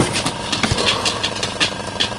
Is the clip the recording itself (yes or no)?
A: yes